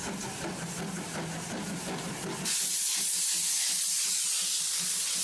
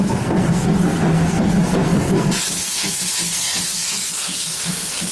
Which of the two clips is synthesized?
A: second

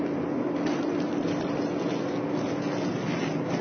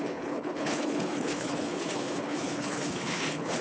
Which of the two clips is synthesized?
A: second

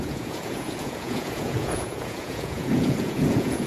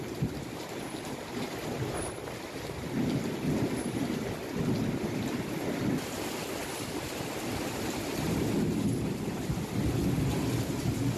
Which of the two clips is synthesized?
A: first